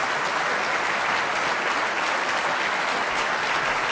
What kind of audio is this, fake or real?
real